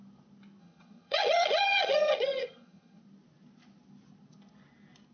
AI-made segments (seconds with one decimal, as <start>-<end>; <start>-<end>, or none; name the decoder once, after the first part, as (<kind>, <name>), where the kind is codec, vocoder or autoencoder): 0.6-3.0 (vocoder, HiFi-GAN)